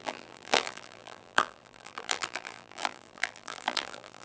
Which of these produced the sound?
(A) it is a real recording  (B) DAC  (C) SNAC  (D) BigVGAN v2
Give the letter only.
D